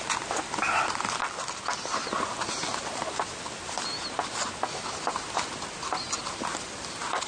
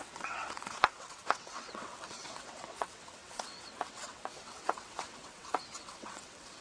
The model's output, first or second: second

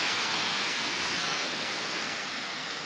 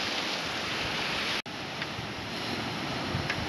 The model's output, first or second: first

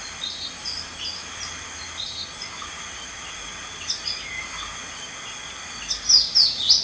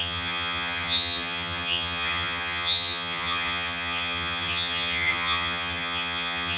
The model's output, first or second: second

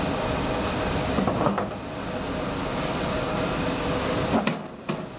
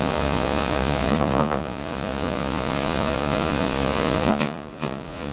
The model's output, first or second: second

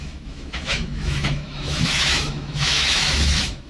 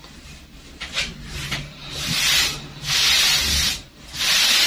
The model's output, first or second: first